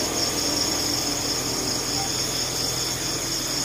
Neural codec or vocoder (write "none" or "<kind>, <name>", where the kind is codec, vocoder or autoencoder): none